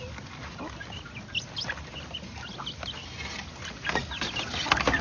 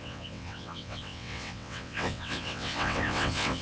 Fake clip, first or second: second